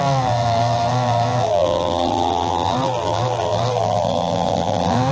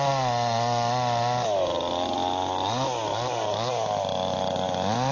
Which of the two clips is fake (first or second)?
first